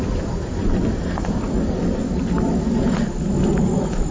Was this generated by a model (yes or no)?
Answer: no